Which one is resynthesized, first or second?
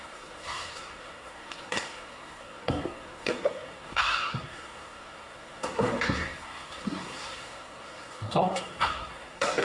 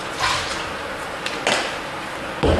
first